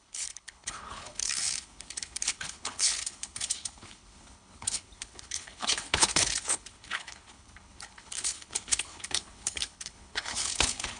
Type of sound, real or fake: fake